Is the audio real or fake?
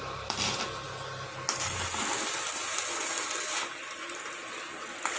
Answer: real